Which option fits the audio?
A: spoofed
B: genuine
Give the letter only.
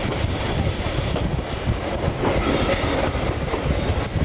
B